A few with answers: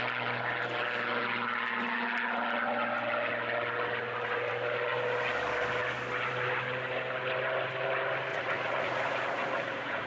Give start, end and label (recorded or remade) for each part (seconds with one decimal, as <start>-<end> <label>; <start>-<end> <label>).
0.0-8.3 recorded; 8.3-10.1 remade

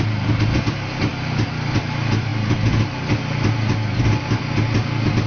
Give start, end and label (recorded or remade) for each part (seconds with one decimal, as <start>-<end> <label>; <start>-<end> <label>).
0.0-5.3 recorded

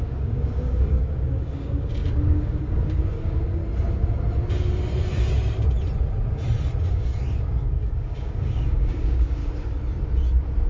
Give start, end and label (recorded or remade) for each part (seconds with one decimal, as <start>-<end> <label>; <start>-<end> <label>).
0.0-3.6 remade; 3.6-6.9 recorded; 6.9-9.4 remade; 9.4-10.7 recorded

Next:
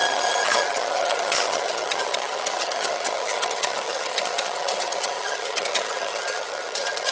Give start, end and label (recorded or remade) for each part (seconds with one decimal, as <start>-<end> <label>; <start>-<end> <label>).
0.0-7.1 remade